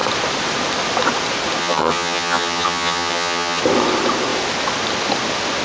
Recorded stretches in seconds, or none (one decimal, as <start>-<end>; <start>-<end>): 0.0-1.6; 3.6-5.6